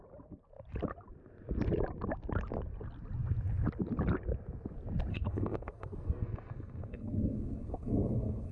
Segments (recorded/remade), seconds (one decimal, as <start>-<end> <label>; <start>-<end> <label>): 0.0-5.1 recorded; 5.1-8.5 remade